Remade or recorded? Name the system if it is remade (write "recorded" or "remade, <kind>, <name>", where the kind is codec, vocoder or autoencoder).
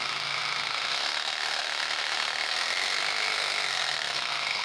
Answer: remade, codec, SNAC